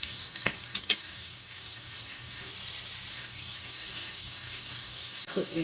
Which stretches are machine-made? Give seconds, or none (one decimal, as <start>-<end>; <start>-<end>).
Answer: 0.0-2.5; 3.1-5.6